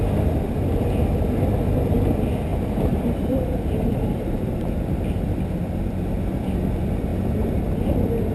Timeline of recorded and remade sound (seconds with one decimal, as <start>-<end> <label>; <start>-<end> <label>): 0.0-2.5 recorded; 2.5-4.7 remade; 4.7-8.3 recorded